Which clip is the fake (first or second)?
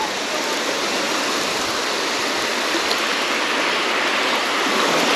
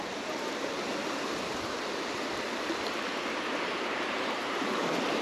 second